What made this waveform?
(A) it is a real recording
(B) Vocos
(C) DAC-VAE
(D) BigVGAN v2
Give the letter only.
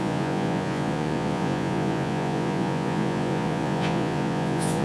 B